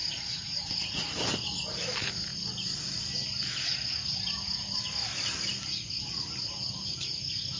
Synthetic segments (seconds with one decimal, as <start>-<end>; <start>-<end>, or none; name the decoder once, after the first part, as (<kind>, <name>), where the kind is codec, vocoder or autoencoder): 0.0-1.1 (vocoder, Vocos)